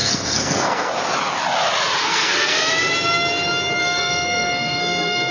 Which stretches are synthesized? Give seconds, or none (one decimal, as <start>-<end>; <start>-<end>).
0.0-0.9; 2.0-2.7; 3.8-5.3